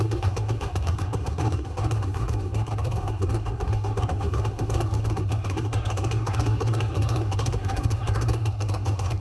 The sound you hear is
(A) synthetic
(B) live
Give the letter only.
A